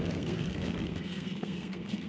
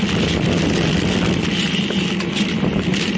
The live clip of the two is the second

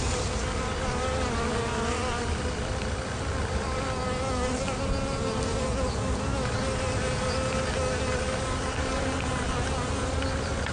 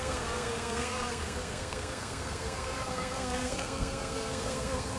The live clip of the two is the first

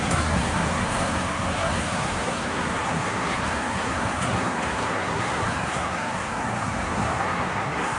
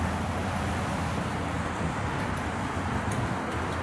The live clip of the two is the second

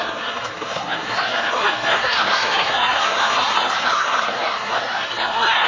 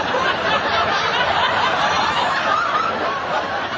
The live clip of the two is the second